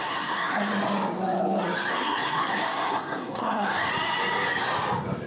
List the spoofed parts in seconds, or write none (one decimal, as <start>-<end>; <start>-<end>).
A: 0.0-0.7; 1.9-3.9